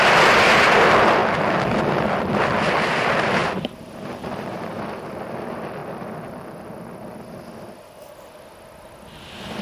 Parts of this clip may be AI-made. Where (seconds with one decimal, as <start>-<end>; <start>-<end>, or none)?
3.4-5.1